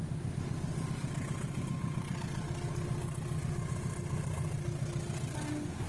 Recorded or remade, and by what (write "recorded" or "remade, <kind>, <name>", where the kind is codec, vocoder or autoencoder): recorded